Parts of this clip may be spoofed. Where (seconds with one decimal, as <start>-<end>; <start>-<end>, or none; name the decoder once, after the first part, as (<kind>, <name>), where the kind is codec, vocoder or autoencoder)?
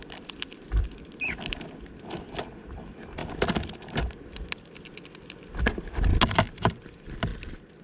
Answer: 0.0-3.2 (vocoder, BigVGAN v2); 6.3-7.3